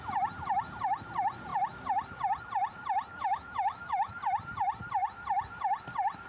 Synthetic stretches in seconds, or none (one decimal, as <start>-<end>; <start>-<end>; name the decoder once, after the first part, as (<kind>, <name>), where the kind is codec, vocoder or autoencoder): 3.1-4.2 (autoencoder, DAC-VAE)